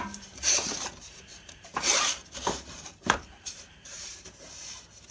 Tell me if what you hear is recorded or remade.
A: remade